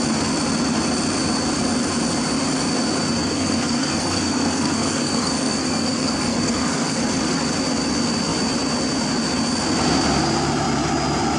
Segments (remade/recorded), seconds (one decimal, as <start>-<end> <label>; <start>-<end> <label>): 0.0-3.2 recorded; 3.2-7.0 remade; 7.0-11.4 recorded